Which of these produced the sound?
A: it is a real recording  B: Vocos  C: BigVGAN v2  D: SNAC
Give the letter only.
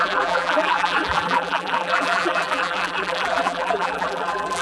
C